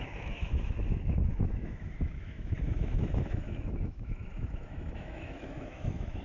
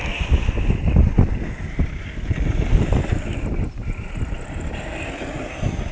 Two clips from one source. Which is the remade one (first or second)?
first